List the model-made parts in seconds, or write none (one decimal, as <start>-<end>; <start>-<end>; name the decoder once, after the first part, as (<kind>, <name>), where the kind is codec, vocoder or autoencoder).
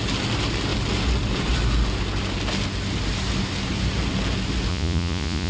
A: 4.7-5.5 (vocoder, Vocos)